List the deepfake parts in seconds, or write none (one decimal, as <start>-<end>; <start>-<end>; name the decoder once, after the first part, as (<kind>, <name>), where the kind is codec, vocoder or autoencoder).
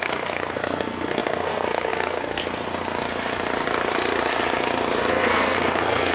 0.0-2.4 (codec, SNAC); 5.1-6.1